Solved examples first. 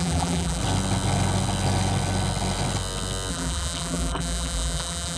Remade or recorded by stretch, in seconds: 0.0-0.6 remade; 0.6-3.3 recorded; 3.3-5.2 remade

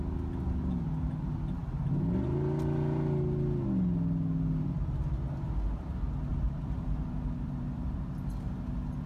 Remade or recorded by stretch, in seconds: 0.0-6.3 recorded; 6.3-8.1 remade; 8.1-9.1 recorded

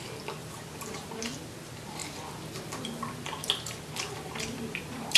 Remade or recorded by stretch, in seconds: 0.0-0.4 recorded; 0.4-1.2 remade; 1.2-5.2 recorded